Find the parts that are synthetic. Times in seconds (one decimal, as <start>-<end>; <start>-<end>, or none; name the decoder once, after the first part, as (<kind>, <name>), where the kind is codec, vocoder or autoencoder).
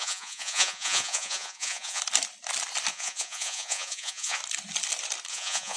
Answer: 0.0-2.0 (vocoder, Vocos); 2.9-4.4; 5.3-5.8